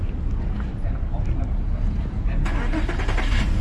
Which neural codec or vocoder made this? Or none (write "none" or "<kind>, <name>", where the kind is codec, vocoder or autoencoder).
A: none